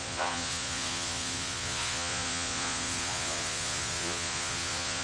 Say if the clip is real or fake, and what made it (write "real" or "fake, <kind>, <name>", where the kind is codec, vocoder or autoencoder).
fake, vocoder, Vocos